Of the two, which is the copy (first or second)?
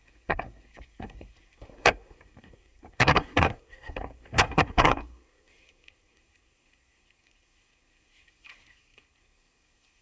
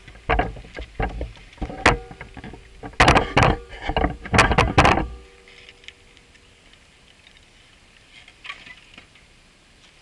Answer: first